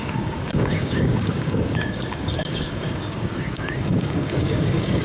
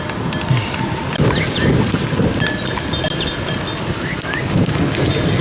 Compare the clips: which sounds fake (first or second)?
first